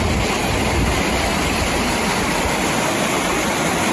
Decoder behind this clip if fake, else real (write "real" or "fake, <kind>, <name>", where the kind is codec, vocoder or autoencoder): real